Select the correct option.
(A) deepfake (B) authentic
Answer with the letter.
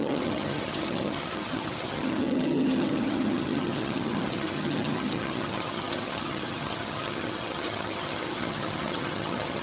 A